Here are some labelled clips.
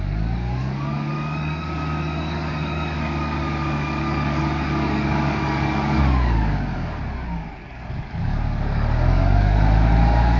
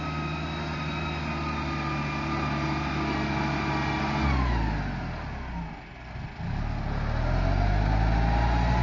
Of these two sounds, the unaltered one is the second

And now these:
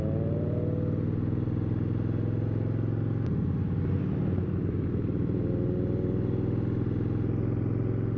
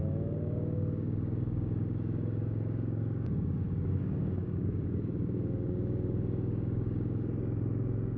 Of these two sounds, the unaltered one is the first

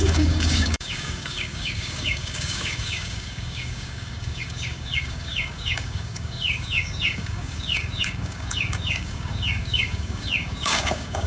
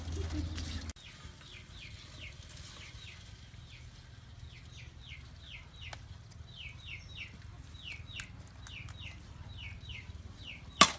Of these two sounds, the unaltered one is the second